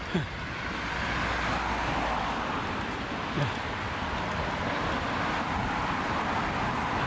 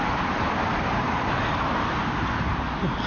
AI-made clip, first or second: second